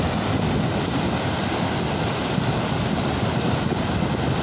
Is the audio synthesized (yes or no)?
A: no